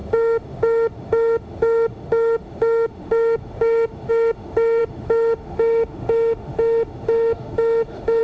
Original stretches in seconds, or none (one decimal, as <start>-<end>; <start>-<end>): none